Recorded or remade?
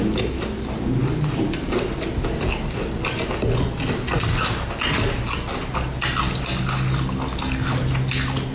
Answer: recorded